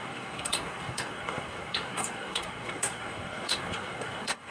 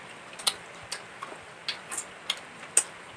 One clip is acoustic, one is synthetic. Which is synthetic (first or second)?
first